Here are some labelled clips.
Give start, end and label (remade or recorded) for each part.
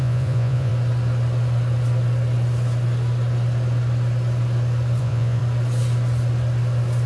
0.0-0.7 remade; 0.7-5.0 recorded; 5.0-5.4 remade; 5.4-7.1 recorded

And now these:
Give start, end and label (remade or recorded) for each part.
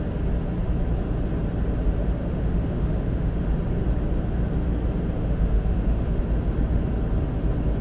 0.0-2.2 recorded; 2.2-3.4 remade; 3.4-5.2 recorded; 5.2-6.2 remade; 6.2-7.8 recorded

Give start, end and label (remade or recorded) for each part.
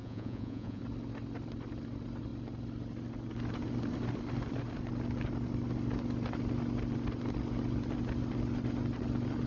0.0-0.8 remade; 0.8-9.5 recorded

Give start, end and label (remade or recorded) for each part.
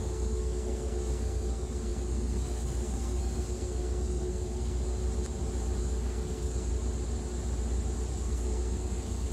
0.0-5.0 remade; 5.0-5.8 recorded; 5.8-6.7 remade; 6.7-8.1 recorded; 8.1-9.3 remade